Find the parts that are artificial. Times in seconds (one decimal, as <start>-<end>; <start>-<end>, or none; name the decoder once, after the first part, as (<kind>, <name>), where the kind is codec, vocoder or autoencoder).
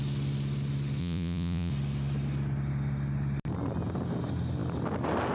1.0-1.7 (vocoder, Vocos)